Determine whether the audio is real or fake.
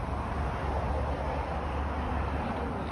real